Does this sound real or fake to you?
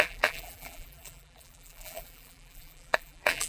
fake